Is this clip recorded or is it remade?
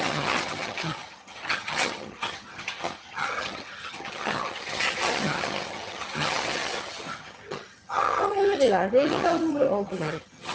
remade